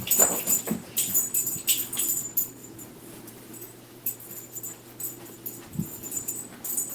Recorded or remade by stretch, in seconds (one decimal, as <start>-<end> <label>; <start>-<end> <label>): 0.0-2.6 recorded; 2.6-6.3 remade; 6.3-6.9 recorded